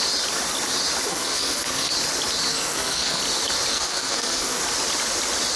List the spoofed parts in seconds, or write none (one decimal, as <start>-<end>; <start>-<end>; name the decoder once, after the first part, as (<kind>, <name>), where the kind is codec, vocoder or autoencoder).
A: 1.1-1.9 (codec, SNAC); 2.5-3.2; 3.7-4.6